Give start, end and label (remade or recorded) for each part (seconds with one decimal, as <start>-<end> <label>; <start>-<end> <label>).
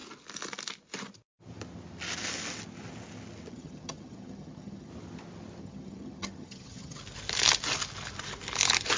0.0-3.5 recorded; 3.5-4.9 remade; 4.9-5.6 recorded; 5.6-7.0 remade; 7.0-9.0 recorded